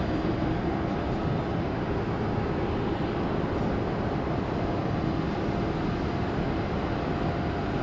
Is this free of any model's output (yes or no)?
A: yes